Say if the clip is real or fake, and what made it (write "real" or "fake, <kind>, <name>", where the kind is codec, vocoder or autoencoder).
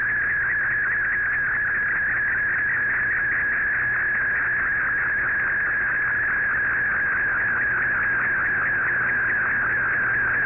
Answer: real